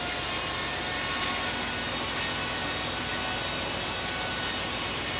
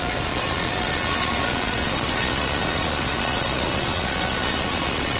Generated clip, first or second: second